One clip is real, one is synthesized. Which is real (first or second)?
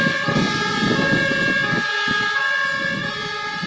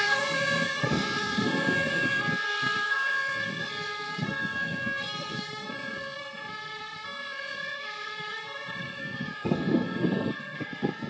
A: first